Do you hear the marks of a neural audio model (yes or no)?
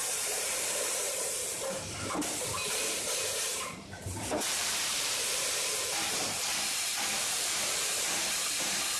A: yes